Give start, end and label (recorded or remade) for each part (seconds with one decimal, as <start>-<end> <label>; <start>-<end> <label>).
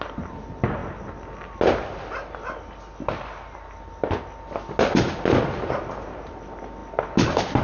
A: 0.0-7.6 recorded